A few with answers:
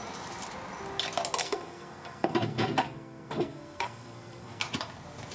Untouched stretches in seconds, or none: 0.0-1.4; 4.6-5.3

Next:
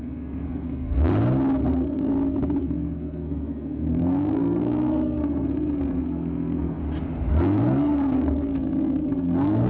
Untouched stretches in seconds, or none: 1.1-1.6; 2.1-2.6; 6.8-7.3

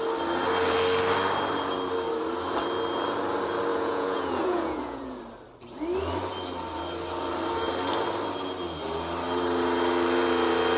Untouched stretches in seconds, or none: 0.0-3.7; 5.2-10.8

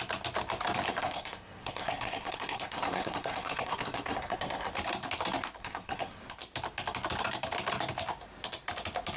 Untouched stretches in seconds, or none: 0.0-0.9; 4.7-5.6; 6.2-9.2

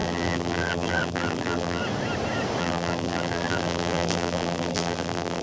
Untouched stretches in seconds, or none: 1.8-2.6